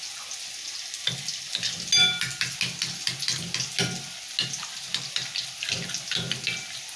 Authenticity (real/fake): real